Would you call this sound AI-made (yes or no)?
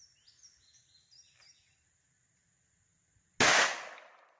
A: no